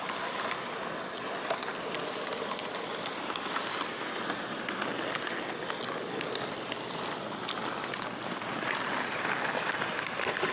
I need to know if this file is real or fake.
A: fake